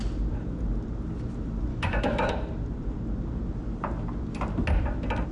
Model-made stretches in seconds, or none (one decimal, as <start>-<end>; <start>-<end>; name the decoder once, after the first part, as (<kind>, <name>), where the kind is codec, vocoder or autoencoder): 1.7-2.3 (autoencoder, DAC-VAE)